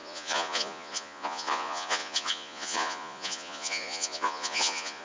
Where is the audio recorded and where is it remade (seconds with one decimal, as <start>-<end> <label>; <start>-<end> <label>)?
0.0-5.0 remade